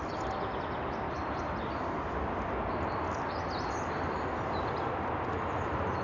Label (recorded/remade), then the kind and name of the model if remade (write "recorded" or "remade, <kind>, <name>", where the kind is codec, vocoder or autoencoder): recorded